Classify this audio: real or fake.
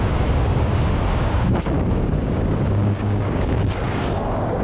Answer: fake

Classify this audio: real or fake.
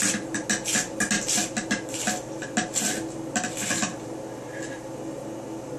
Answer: real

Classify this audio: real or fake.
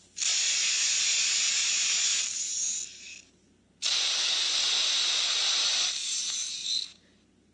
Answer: real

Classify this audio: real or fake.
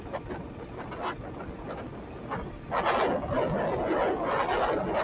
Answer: real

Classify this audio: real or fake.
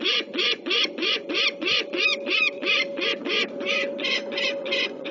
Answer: fake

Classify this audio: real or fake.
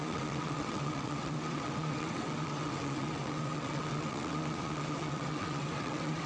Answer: fake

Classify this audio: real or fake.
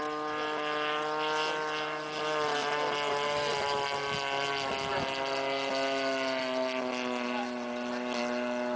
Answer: real